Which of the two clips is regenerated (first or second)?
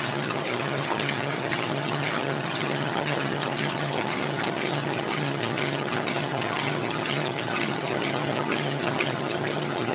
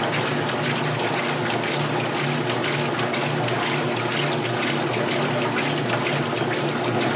first